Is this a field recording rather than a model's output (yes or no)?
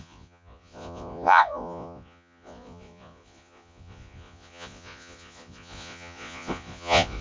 no